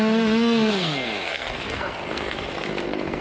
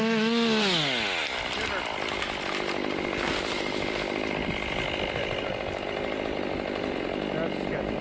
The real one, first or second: second